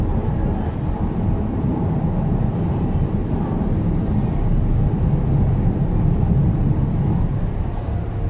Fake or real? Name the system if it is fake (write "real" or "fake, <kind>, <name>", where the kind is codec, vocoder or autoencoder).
real